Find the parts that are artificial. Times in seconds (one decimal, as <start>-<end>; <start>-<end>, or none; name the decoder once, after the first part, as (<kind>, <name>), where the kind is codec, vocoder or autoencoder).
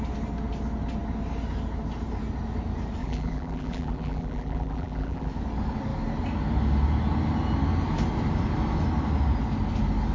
3.0-5.3 (vocoder, BigVGAN v2)